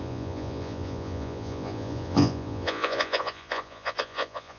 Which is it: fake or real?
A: fake